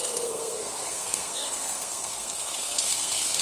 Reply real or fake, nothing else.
fake